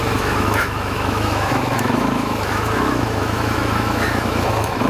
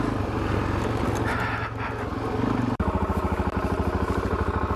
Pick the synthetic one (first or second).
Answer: first